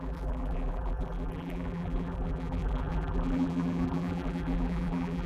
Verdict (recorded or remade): remade